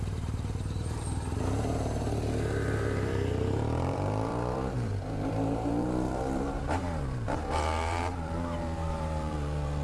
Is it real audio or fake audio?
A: fake